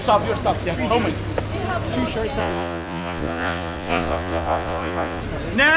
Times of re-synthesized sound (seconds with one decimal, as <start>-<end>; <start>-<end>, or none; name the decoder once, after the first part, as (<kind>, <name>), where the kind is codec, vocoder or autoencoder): 2.4-5.2 (vocoder, Vocos)